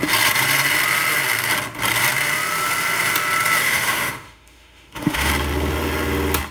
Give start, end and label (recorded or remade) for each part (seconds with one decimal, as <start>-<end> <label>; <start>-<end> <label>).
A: 0.0-3.6 recorded; 3.6-5.3 remade; 5.3-6.5 recorded

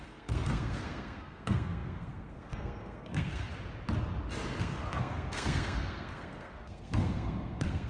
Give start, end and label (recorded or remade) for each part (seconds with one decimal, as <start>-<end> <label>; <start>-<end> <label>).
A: 0.0-3.5 remade; 3.5-4.6 recorded; 4.6-7.9 remade

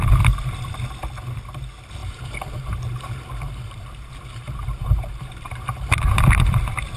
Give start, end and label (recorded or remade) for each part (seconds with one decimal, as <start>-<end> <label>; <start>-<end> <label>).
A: 0.0-2.0 recorded; 2.0-6.2 remade; 6.2-7.0 recorded

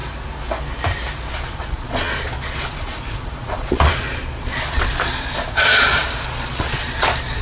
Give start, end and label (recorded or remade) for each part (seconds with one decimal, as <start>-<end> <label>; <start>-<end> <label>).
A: 0.0-1.3 recorded; 1.3-7.4 remade